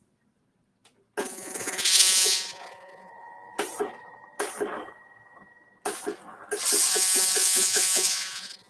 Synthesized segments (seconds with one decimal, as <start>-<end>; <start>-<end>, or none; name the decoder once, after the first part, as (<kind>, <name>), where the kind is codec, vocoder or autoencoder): 1.2-3.1 (vocoder, Vocos); 6.9-8.7